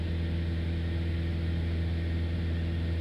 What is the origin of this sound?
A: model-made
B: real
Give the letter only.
B